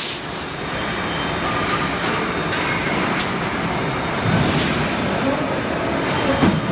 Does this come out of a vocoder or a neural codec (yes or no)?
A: no